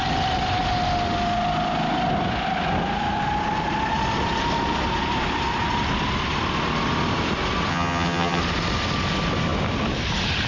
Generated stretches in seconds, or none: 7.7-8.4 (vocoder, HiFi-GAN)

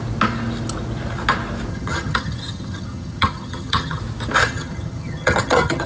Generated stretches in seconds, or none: 1.7-4.0 (vocoder, HiFi-GAN); 4.4-5.9

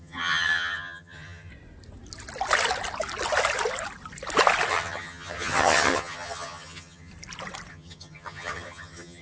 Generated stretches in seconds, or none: 0.0-1.5 (vocoder, HiFi-GAN); 4.7-7.1; 7.7-9.2